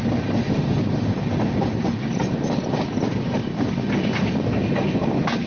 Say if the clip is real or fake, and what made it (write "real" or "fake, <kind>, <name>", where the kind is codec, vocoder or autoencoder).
real